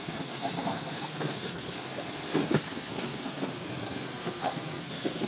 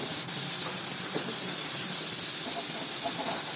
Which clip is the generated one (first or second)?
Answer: first